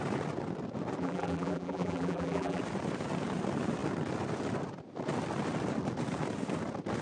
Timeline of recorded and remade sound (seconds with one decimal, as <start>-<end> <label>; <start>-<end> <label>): 0.0-1.0 recorded; 1.0-2.6 remade; 2.6-7.0 recorded